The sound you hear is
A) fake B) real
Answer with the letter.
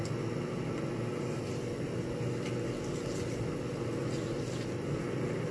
B